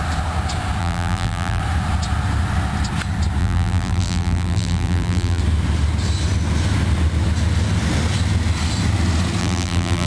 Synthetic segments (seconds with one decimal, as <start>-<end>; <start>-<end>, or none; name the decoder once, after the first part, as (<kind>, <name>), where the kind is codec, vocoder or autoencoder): 0.8-1.6 (vocoder, BigVGAN v2); 3.4-5.4; 9.4-10.1